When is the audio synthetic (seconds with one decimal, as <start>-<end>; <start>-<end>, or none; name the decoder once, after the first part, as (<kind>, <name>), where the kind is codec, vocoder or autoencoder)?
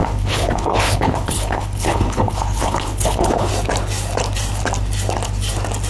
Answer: 0.0-3.5 (codec, HILCodec)